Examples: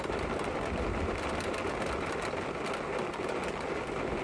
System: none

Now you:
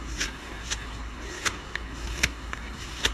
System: codec, SNAC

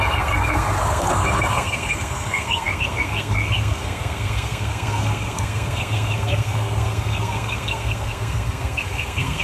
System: codec, SNAC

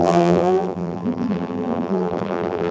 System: vocoder, BigVGAN v2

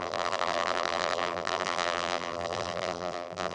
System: vocoder, BigVGAN v2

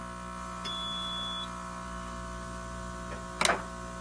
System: none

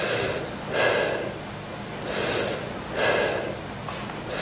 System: none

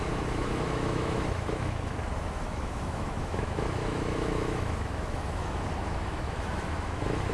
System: autoencoder, DAC-VAE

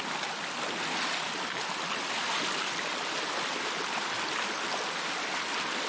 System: none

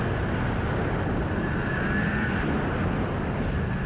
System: none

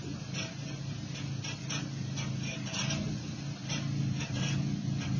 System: none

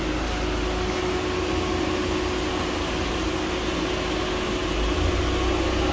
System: none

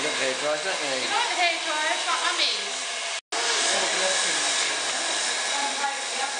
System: none